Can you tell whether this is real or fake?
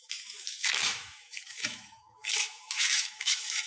fake